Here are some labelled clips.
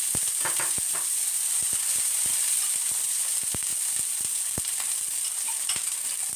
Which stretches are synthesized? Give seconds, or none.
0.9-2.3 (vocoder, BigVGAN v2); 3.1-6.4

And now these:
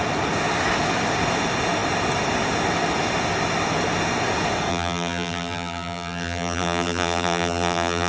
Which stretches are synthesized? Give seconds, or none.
4.7-8.1 (vocoder, BigVGAN v2)